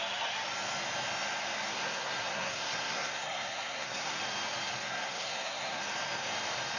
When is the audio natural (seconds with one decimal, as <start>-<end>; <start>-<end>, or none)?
0.0-1.7; 4.2-4.9; 5.8-6.8